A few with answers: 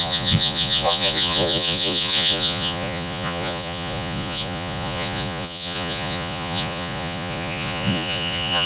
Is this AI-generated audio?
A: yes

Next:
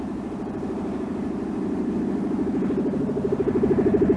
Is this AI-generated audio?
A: no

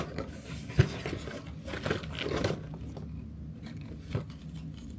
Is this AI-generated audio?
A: no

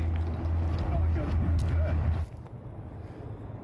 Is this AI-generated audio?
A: no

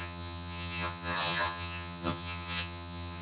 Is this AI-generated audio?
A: yes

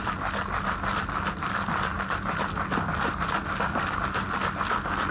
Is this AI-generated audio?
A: no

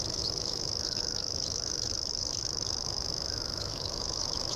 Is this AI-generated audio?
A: yes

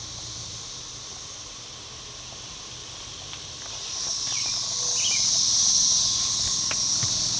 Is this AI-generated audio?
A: no